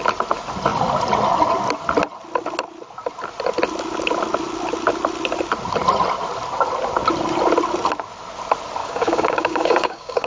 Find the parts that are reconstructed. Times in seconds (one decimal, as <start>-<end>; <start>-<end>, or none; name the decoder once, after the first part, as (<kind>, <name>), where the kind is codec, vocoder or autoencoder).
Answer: 8.8-10.3 (codec, DAC)